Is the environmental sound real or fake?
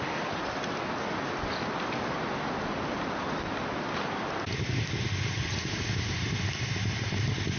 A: real